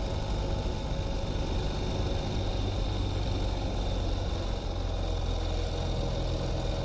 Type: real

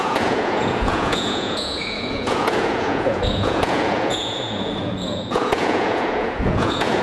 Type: fake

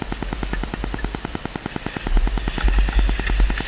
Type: real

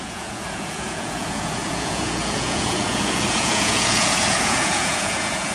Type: fake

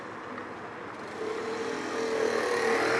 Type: real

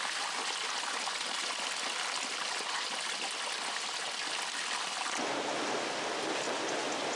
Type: real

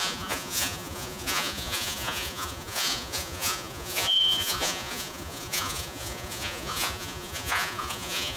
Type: fake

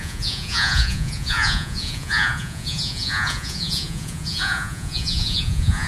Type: fake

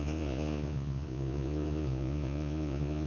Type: fake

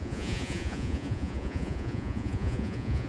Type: fake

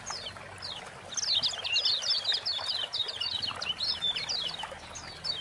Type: real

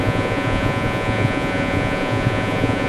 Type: fake